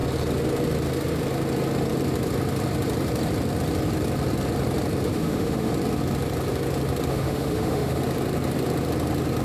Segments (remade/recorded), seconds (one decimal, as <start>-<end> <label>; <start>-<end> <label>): 0.0-5.1 recorded; 5.1-5.7 remade; 5.7-7.1 recorded; 7.1-8.0 remade; 8.0-9.4 recorded